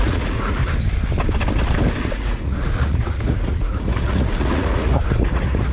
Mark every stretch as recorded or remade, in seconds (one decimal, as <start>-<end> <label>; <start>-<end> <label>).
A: 0.0-0.6 remade; 0.6-2.0 recorded; 2.0-5.7 remade